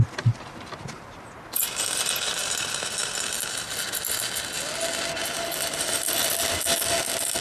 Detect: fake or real real